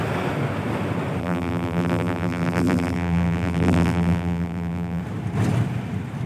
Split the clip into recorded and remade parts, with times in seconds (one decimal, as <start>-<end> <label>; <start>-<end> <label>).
0.0-1.2 recorded; 1.2-5.0 remade; 5.0-6.3 recorded

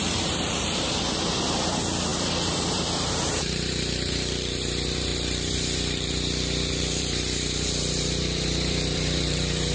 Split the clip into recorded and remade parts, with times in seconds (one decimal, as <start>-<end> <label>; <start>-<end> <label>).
0.0-9.7 remade

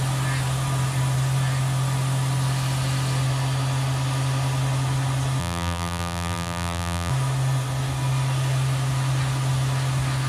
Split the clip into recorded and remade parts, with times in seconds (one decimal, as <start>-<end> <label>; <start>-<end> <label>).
0.0-5.4 recorded; 5.4-7.1 remade; 7.1-10.3 recorded